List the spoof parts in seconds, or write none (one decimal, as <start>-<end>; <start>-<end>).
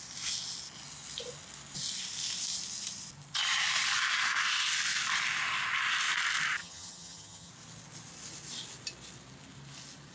6.6-7.5